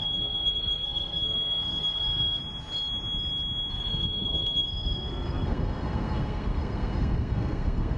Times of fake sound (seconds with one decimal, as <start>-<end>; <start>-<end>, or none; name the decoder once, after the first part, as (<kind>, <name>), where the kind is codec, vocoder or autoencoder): 0.0-2.4 (codec, SNAC); 3.7-8.0